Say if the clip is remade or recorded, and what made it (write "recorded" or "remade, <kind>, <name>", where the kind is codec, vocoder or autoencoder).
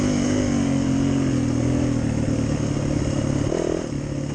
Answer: recorded